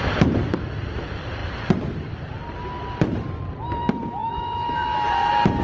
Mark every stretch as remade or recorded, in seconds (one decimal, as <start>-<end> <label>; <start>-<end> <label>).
0.0-4.2 recorded; 4.2-5.1 remade; 5.1-5.6 recorded